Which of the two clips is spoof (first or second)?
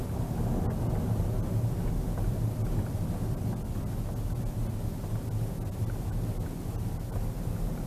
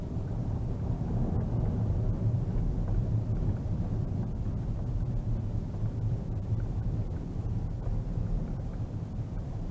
second